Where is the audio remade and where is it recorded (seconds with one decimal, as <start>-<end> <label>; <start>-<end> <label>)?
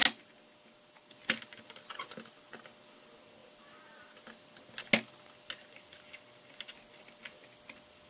0.0-8.1 recorded